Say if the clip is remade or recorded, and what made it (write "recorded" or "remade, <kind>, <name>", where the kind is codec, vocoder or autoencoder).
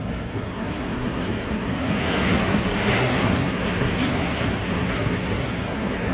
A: remade, codec, SNAC